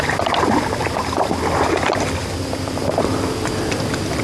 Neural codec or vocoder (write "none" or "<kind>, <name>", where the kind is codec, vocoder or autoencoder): none